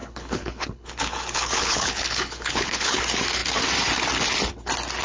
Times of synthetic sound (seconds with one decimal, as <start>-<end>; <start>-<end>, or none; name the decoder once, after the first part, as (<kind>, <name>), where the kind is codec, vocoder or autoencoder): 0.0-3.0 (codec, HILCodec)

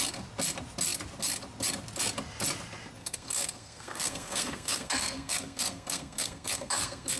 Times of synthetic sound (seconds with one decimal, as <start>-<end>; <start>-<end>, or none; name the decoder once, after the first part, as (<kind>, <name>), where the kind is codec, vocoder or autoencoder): 3.0-7.2 (codec, SNAC)

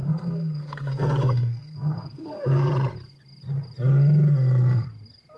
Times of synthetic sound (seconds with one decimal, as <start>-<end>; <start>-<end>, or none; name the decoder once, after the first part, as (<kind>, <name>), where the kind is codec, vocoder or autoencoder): 0.0-2.7 (codec, SNAC)

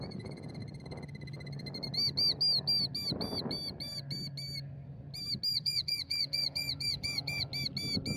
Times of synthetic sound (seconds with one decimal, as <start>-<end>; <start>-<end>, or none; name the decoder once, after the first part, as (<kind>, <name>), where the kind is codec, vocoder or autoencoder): 0.0-0.6 (vocoder, Vocos); 5.5-7.5

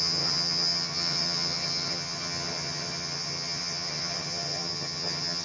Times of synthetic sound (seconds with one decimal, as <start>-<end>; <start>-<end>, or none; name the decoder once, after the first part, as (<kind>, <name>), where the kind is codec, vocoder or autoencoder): 0.0-5.4 (vocoder, HiFi-GAN)